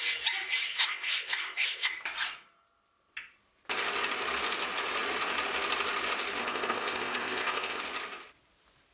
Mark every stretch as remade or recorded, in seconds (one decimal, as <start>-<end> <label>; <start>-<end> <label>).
0.0-0.7 recorded; 0.7-1.9 remade; 1.9-6.4 recorded; 6.4-7.8 remade; 7.8-8.9 recorded